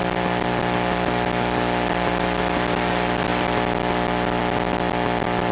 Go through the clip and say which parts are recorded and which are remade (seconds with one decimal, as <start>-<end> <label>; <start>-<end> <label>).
0.0-5.5 recorded